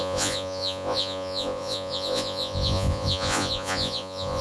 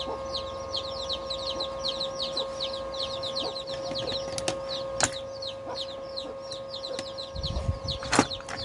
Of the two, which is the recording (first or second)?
second